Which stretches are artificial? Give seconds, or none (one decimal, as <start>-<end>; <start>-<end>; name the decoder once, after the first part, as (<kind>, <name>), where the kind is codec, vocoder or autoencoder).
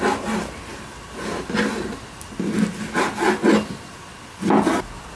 none